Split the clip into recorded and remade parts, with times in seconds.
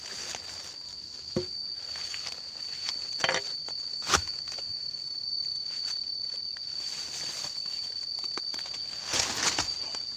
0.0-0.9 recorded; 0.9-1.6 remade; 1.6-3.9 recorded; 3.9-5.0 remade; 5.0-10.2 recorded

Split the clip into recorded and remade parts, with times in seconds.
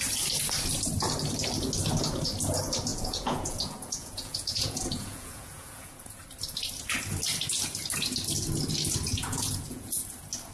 0.0-2.9 recorded; 2.9-6.2 remade; 6.2-9.1 recorded; 9.1-10.0 remade; 10.0-10.5 recorded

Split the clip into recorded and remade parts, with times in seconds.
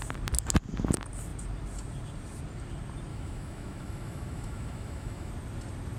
0.0-3.1 recorded; 3.1-5.3 remade; 5.3-6.0 recorded